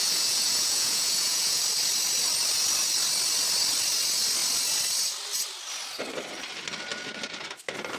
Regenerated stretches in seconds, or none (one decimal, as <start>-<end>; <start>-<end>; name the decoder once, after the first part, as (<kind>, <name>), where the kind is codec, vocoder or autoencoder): 0.0-1.6 (vocoder, Vocos)